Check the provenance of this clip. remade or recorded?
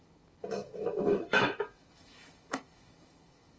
remade